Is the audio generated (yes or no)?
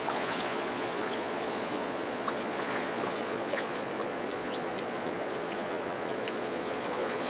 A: yes